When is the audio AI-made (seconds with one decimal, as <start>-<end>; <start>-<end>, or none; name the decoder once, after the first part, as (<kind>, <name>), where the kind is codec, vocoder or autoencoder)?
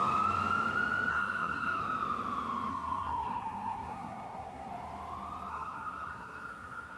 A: 1.1-1.8 (codec, SNAC); 2.7-4.7; 5.5-7.0